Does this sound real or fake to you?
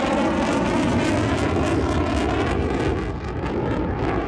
real